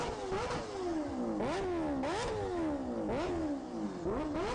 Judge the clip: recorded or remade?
recorded